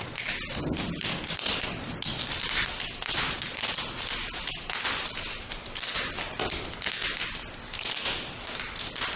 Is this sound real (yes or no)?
yes